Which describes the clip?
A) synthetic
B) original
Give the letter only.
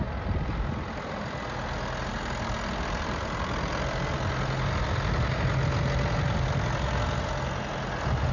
B